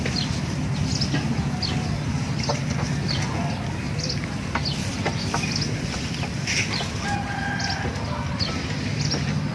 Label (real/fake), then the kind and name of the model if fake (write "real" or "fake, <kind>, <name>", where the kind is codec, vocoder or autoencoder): real